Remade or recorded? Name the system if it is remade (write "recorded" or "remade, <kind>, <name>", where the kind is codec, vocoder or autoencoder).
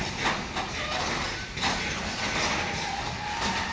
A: recorded